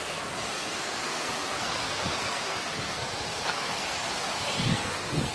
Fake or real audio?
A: fake